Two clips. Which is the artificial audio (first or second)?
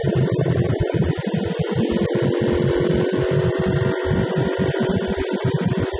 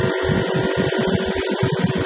first